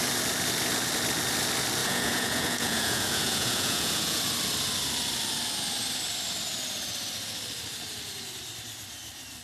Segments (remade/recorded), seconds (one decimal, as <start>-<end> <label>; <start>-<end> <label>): 0.0-1.8 recorded; 1.8-4.2 remade; 4.2-9.4 recorded